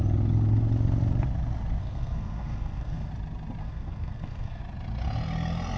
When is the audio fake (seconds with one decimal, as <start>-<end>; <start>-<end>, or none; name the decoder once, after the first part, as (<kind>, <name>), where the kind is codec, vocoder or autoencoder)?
1.8-3.1 (codec, SNAC); 3.6-4.6